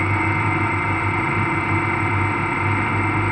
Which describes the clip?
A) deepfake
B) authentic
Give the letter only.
B